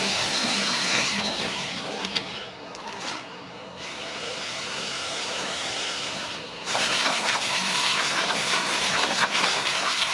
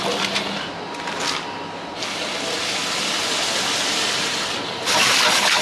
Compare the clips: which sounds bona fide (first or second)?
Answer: second